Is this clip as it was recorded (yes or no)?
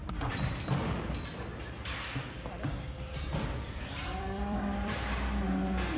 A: no